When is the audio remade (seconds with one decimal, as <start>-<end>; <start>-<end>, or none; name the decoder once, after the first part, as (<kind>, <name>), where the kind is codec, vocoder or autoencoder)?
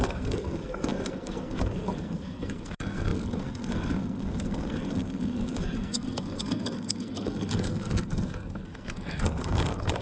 0.0-10.0 (codec, SNAC)